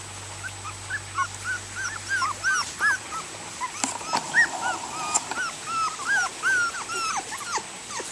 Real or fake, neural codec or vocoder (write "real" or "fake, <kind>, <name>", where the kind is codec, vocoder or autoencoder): real